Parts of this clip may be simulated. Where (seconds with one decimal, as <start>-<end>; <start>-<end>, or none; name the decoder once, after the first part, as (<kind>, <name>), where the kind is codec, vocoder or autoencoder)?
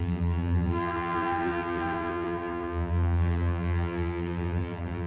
0.0-5.1 (vocoder, BigVGAN v2)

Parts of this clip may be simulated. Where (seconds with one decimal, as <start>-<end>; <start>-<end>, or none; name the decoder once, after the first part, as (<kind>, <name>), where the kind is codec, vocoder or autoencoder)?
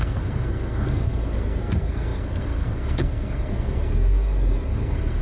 0.0-5.2 (codec, SNAC)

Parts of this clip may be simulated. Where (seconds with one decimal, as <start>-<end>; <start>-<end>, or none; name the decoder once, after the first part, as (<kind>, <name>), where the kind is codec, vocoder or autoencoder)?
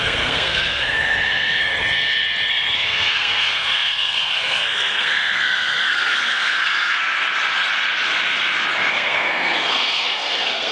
0.0-1.7 (codec, SNAC); 2.5-7.0; 8.9-10.7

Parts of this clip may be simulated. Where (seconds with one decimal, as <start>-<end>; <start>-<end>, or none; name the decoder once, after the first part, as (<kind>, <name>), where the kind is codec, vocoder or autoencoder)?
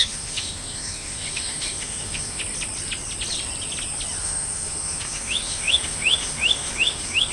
0.0-2.4 (autoencoder, DAC-VAE); 4.2-7.3